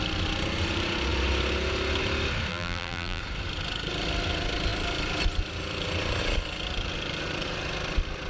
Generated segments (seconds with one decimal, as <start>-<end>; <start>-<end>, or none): 2.5-3.2